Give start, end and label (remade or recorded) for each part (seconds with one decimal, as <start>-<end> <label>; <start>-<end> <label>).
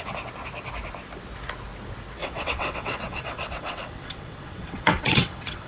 0.0-2.2 recorded; 2.2-5.7 remade